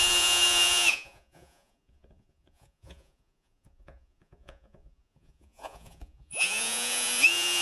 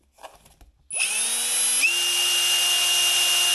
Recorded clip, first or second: second